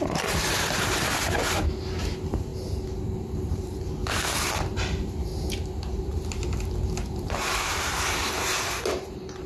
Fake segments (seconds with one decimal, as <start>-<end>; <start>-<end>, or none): 0.0-1.4; 2.0-2.5; 3.5-5.3; 6.0-9.5